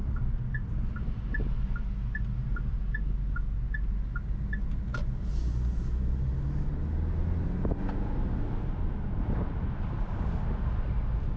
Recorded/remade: recorded